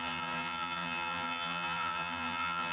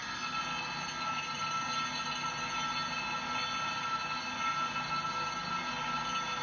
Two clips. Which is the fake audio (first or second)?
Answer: first